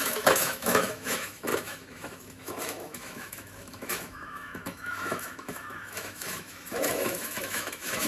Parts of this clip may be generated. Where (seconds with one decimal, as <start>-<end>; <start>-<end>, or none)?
0.0-8.1